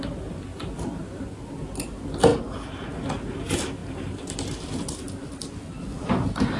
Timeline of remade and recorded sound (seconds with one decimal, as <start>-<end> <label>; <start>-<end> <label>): 0.0-0.5 recorded; 0.5-1.2 remade; 1.2-2.3 recorded; 2.3-2.9 remade; 2.9-3.8 recorded; 3.8-6.0 remade; 6.0-6.6 recorded